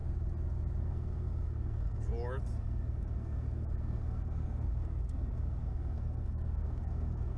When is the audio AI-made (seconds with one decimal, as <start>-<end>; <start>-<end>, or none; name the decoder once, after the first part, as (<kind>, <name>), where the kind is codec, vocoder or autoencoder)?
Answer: 0.8-2.1 (codec, SNAC); 2.6-7.4